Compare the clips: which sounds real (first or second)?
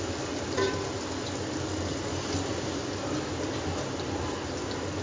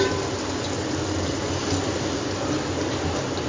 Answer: first